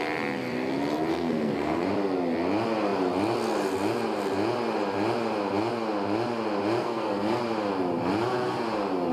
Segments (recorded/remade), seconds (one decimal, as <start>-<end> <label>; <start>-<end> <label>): 0.0-1.1 recorded; 1.1-1.9 remade; 1.9-6.8 recorded; 6.8-7.4 remade; 7.4-9.1 recorded